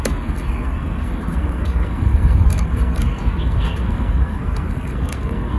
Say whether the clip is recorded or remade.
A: remade